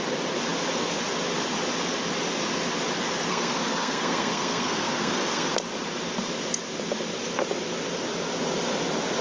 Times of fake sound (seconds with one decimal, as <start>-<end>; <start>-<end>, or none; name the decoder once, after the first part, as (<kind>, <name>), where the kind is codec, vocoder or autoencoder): 3.3-5.5 (codec, SNAC)